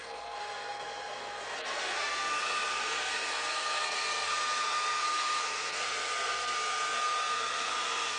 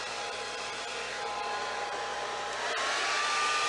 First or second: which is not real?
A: first